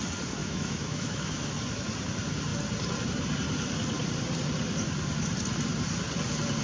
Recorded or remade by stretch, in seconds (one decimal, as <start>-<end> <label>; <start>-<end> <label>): 0.0-0.4 recorded; 0.4-1.5 remade; 1.5-6.6 recorded